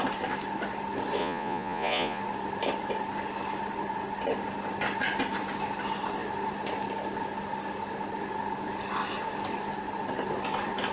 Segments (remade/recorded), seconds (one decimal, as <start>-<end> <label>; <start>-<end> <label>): 0.0-1.2 recorded; 1.2-2.2 remade; 2.2-10.9 recorded